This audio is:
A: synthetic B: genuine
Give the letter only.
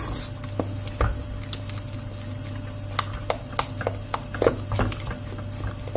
B